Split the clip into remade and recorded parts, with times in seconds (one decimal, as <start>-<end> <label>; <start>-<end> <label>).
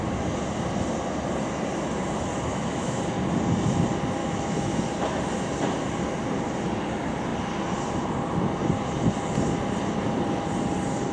0.0-2.5 recorded; 2.5-3.0 remade; 3.0-4.2 recorded; 4.2-4.8 remade; 4.8-11.1 recorded